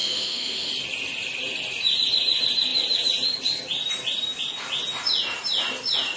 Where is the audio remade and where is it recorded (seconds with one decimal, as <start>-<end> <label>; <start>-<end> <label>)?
0.0-0.7 remade; 0.7-6.2 recorded